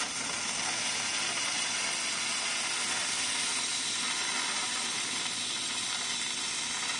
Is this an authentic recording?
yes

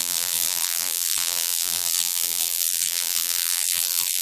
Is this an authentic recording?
no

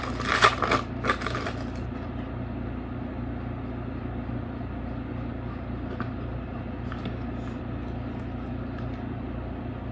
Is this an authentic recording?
yes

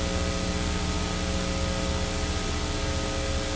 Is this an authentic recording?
yes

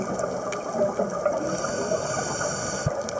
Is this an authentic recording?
yes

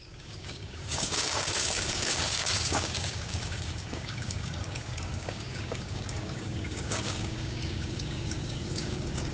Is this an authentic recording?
no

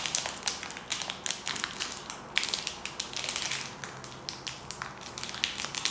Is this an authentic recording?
yes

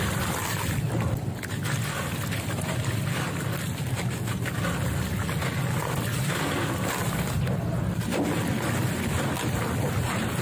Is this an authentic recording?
yes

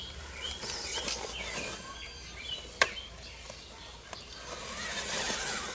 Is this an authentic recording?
yes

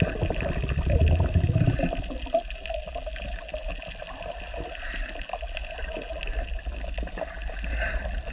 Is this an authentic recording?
yes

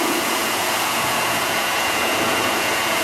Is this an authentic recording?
no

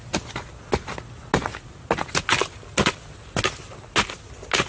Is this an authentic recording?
yes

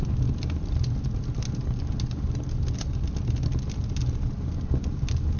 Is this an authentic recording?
yes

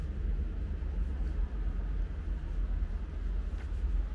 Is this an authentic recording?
yes